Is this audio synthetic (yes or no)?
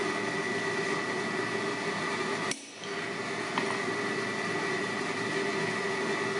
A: no